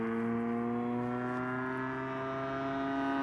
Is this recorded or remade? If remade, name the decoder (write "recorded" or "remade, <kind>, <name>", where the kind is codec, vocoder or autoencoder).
recorded